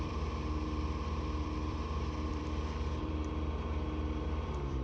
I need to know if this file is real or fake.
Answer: fake